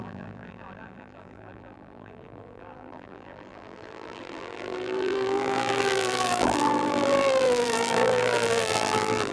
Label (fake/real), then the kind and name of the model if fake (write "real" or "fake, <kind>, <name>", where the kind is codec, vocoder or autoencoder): fake, vocoder, BigVGAN v2